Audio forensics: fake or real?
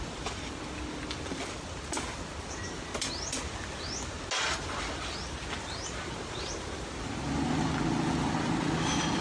real